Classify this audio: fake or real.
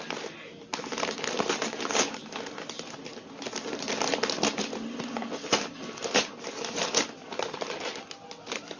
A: real